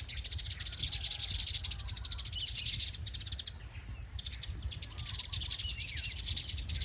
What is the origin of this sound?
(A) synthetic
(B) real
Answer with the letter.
B